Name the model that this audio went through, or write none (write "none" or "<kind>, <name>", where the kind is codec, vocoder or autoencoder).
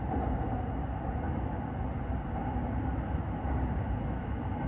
none